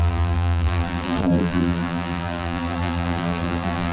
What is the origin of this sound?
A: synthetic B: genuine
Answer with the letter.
A